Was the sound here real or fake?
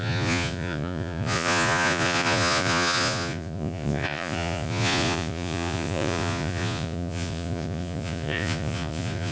fake